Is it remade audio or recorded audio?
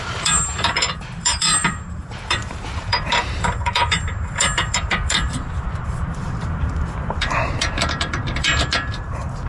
remade